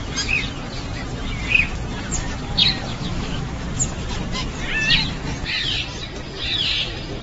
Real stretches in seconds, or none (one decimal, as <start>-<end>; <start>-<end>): 0.0-2.9; 3.6-7.2